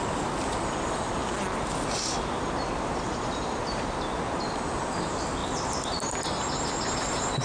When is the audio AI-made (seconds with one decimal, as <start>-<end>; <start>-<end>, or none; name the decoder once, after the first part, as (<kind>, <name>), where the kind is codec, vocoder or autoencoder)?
none